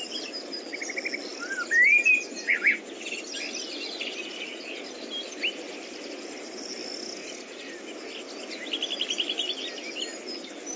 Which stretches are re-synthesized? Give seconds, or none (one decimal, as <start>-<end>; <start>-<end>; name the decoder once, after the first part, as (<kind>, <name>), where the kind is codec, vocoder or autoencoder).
4.2-4.8 (vocoder, Vocos); 7.2-7.7